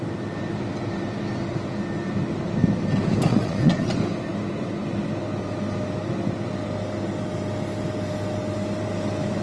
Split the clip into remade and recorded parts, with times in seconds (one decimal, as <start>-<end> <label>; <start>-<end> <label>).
0.0-3.3 recorded; 3.3-3.9 remade; 3.9-9.4 recorded